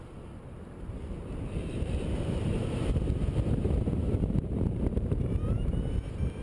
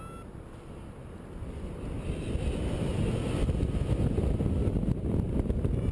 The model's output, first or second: first